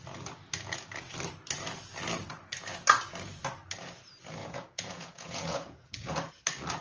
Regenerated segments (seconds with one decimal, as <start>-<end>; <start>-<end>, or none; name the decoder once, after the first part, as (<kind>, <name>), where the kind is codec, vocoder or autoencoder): 4.4-6.3 (vocoder, Vocos)